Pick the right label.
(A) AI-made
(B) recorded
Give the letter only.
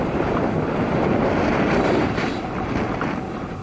B